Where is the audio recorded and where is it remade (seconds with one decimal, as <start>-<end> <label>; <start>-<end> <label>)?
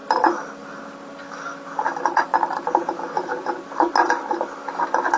0.0-0.8 remade; 0.8-5.2 recorded